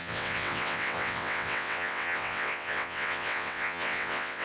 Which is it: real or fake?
fake